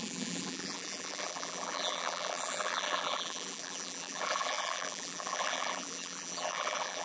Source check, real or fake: fake